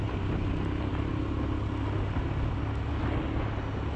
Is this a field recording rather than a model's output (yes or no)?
yes